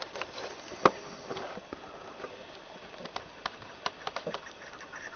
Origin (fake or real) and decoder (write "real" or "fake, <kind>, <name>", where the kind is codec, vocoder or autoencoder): fake, vocoder, BigVGAN v2